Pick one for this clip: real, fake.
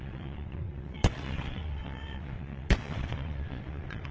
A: fake